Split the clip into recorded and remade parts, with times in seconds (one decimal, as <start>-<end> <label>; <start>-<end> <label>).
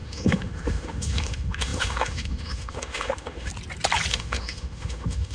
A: 0.0-3.5 remade; 3.5-4.1 recorded; 4.1-5.3 remade